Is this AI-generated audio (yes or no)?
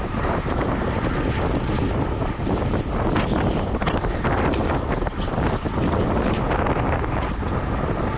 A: no